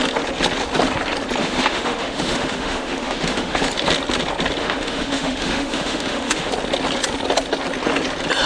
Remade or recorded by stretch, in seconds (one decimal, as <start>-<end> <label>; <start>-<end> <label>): 0.0-1.4 recorded; 1.4-3.6 remade; 3.6-4.6 recorded; 4.6-6.5 remade; 6.5-8.5 recorded